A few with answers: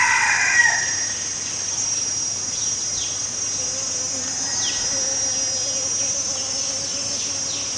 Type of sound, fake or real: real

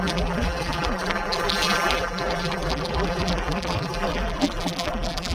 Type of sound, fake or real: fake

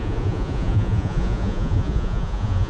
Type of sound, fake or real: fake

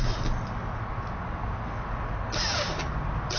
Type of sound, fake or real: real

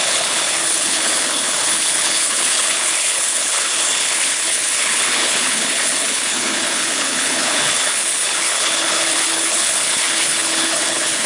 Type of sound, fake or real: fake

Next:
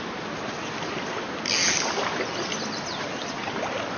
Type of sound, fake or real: real